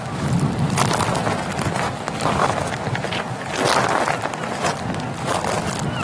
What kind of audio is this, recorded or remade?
recorded